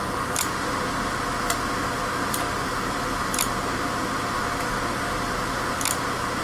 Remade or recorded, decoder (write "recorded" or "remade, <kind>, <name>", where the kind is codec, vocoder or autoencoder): recorded